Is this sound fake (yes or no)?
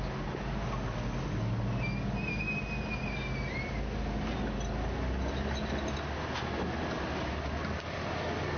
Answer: no